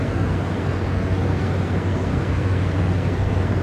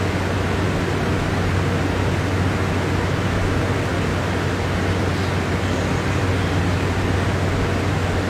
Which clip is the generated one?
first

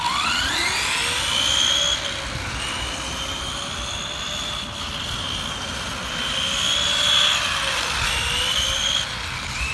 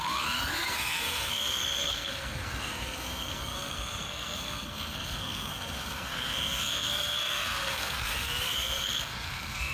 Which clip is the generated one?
second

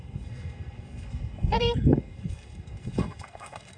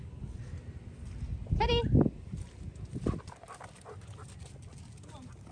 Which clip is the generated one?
first